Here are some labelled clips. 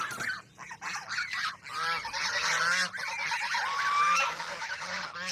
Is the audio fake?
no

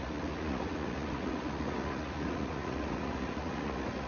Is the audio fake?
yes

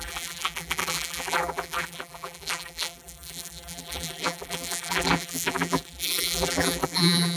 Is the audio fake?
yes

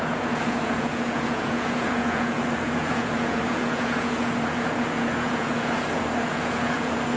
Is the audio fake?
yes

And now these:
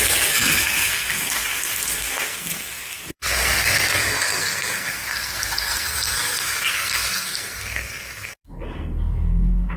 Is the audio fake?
yes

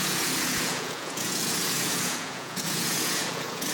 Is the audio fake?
yes